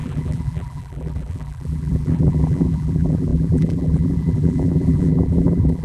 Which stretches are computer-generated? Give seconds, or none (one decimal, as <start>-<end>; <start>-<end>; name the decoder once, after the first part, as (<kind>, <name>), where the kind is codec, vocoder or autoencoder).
0.0-5.8 (vocoder, BigVGAN v2)